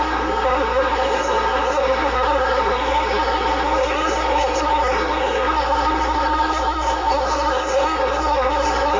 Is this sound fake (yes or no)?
yes